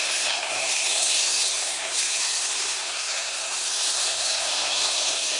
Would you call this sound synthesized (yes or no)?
yes